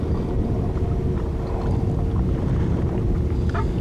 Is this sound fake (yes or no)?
no